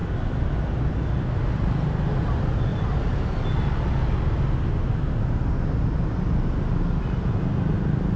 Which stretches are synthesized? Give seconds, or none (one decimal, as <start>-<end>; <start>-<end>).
none